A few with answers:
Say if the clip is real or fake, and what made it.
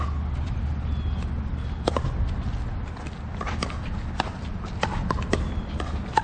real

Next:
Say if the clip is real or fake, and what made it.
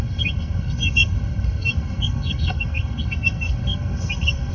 fake, codec, SNAC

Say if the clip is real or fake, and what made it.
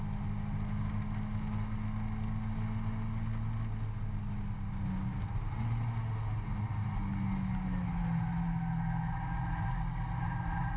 real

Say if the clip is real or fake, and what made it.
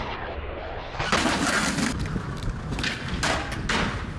real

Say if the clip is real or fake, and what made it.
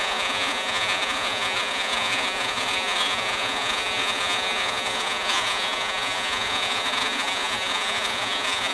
fake, vocoder, Vocos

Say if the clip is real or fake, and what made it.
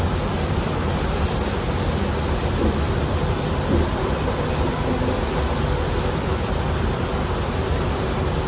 real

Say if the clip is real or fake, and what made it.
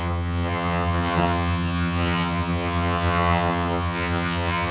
fake, vocoder, HiFi-GAN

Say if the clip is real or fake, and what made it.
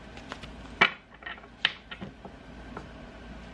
real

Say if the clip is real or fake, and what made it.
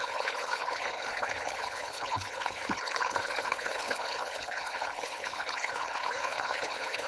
fake, codec, HILCodec